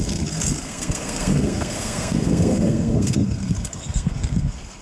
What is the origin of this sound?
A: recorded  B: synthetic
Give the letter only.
B